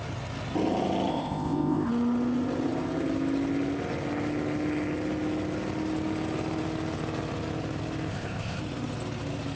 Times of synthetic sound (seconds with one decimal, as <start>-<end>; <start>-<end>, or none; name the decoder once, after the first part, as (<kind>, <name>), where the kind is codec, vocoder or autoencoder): 1.1-1.9 (codec, ZipCodec); 8.1-8.6